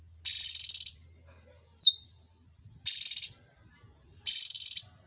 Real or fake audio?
real